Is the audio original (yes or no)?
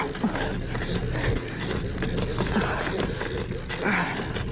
yes